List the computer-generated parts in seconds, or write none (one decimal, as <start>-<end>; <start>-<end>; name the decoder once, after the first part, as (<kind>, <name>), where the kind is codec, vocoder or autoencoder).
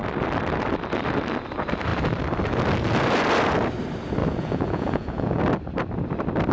4.2-5.4 (vocoder, Vocos)